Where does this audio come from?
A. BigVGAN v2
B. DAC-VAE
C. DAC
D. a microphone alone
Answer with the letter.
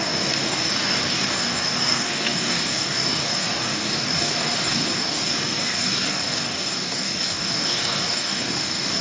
C